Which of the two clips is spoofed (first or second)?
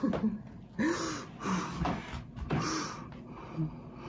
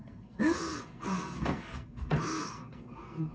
second